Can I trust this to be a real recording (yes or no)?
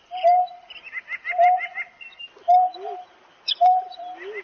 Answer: yes